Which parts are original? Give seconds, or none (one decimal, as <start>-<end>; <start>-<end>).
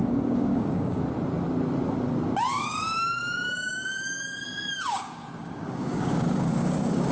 1.0-2.5